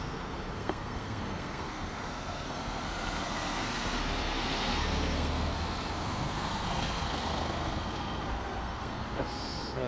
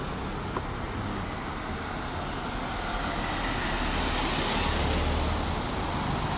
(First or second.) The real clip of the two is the second